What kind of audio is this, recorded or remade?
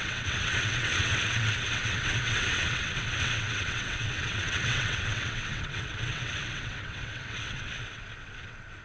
remade